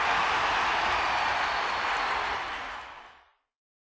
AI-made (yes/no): no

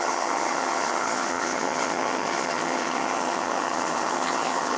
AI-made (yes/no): yes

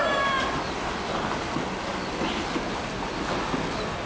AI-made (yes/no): no